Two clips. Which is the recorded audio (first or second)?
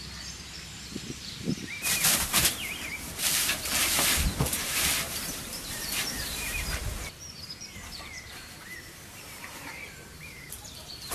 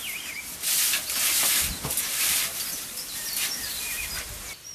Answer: second